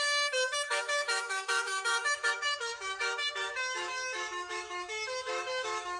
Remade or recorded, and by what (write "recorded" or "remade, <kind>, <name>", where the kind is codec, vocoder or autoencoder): remade, autoencoder, DAC-VAE